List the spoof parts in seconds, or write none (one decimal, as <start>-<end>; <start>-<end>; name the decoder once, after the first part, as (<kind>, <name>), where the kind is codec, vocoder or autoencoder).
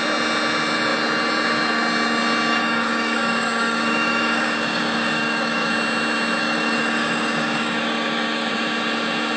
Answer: 2.5-5.7 (codec, DAC); 6.4-8.5